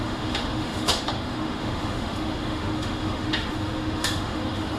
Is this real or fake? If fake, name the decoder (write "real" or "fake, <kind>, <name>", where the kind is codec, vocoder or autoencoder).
fake, autoencoder, DAC-VAE